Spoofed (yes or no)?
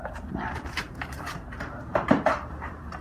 yes